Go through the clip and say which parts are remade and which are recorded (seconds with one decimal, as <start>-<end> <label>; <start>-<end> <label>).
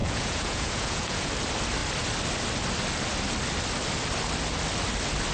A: 0.0-1.3 remade; 1.3-5.3 recorded